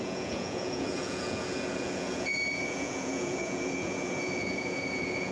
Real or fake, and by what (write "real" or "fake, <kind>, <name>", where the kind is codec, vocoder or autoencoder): fake, vocoder, Vocos